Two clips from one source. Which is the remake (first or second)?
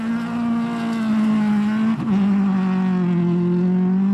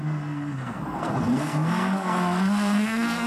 second